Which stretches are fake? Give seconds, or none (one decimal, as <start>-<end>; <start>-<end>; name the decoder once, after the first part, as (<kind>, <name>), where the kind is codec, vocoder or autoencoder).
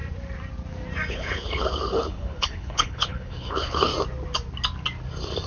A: 1.1-3.9 (codec, HILCodec)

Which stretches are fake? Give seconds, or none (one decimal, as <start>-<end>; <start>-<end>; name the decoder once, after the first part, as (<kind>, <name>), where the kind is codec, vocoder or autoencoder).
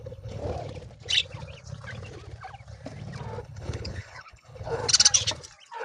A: 0.0-0.4 (codec, HILCodec); 3.4-4.8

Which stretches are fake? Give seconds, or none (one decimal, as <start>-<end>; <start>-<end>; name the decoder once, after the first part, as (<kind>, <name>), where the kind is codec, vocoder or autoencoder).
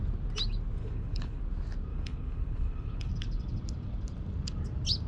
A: 0.8-1.4 (codec, HILCodec); 1.9-3.1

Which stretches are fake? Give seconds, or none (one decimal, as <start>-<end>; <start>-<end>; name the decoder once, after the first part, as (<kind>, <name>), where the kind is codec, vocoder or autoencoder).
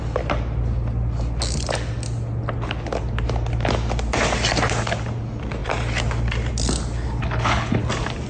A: 7.2-7.8 (codec, HILCodec)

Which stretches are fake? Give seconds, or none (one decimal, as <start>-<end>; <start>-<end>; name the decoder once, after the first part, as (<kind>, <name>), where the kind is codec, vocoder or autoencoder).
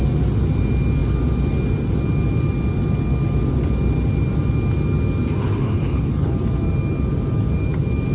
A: 5.4-6.3 (codec, HILCodec)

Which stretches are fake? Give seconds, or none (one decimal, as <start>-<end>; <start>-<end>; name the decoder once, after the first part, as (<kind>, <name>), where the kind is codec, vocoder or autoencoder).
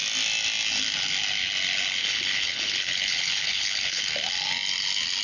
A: 2.0-4.0 (codec, HILCodec)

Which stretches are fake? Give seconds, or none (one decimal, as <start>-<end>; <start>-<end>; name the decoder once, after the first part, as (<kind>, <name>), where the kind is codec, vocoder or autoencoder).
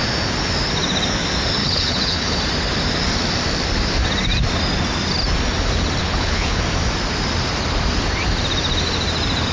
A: 1.6-2.4 (codec, HILCodec); 6.0-6.6